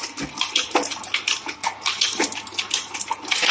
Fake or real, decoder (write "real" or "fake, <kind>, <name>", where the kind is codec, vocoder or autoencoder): real